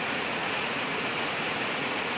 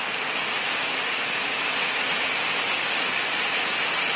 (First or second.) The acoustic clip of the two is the second